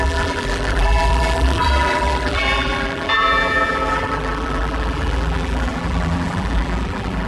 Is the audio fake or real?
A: fake